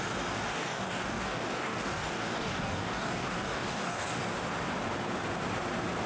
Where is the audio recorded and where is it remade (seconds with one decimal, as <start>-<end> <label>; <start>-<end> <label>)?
0.0-0.5 recorded; 0.5-4.2 remade; 4.2-6.1 recorded